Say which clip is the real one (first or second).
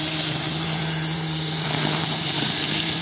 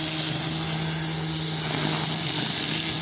second